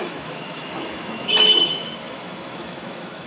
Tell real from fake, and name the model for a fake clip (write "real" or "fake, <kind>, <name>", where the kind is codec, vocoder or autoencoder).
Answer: fake, autoencoder, DAC-VAE